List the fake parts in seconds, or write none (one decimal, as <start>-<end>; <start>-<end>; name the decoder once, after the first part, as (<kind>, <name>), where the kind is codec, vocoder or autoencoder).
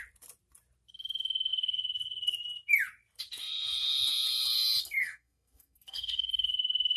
4.8-6.5 (codec, SNAC)